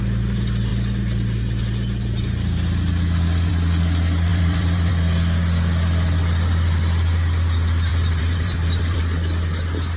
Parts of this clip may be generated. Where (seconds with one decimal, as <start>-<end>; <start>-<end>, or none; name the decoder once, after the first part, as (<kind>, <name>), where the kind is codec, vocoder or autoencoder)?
4.3-4.9 (vocoder, BigVGAN v2); 7.9-9.0